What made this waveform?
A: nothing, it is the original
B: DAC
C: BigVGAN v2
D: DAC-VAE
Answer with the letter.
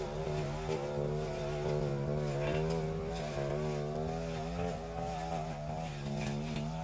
A